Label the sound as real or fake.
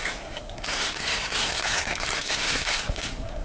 fake